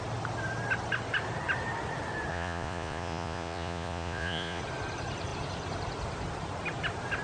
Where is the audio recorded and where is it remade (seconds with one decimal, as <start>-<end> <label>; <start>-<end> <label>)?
0.0-2.3 recorded; 2.3-4.6 remade; 4.6-7.2 recorded

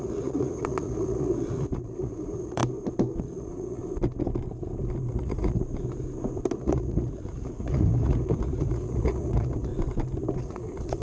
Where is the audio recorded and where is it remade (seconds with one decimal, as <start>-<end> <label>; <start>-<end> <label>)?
0.0-2.6 remade; 2.6-3.2 recorded; 3.2-3.8 remade; 3.8-5.1 recorded; 5.1-5.6 remade; 5.6-6.6 recorded; 6.6-9.7 remade; 9.7-10.4 recorded; 10.4-11.0 remade

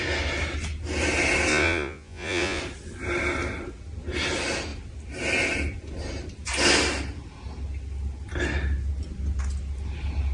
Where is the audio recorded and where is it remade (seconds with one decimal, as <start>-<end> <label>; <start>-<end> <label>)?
0.0-1.5 recorded; 1.5-2.6 remade; 2.6-10.3 recorded

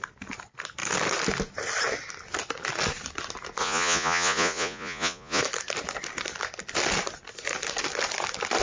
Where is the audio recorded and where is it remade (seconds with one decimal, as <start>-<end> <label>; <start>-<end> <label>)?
0.0-3.6 recorded; 3.6-5.4 remade; 5.4-8.6 recorded

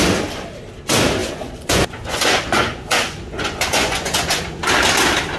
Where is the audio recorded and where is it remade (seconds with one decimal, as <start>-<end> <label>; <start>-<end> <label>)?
0.0-1.2 recorded; 1.2-4.4 remade; 4.4-5.4 recorded

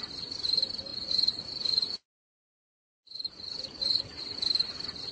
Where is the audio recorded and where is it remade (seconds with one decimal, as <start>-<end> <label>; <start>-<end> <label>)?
0.0-0.9 recorded; 0.9-4.0 remade; 4.0-5.1 recorded

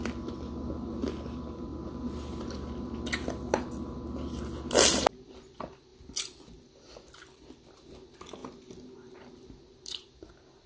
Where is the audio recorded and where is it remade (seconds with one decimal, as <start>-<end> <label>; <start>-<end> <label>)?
0.0-10.7 recorded